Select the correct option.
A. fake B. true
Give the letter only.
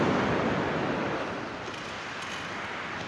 B